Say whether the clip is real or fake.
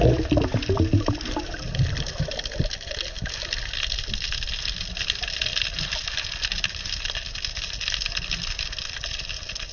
real